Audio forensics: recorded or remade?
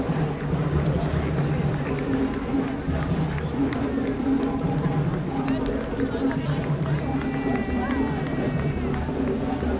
recorded